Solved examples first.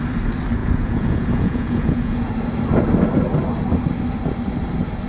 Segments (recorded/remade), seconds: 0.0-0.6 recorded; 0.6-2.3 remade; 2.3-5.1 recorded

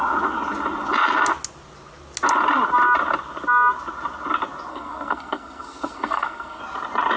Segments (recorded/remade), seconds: 0.0-4.7 recorded; 4.7-6.6 remade; 6.6-7.2 recorded

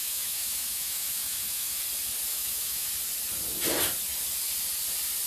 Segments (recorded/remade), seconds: 0.0-1.8 remade; 1.8-2.3 recorded; 2.3-2.9 remade; 2.9-5.3 recorded

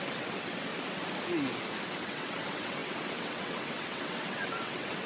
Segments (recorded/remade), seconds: 0.0-0.7 remade; 0.7-1.9 recorded; 1.9-5.1 remade